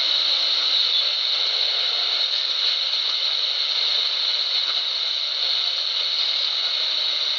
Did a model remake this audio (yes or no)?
no